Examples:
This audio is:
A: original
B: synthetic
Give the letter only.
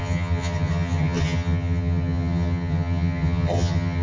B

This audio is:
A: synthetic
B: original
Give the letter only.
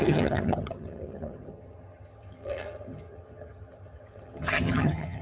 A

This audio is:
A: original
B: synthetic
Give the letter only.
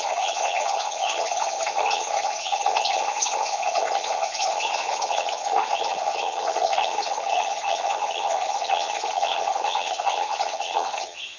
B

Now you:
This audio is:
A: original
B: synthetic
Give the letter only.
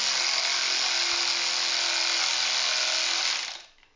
A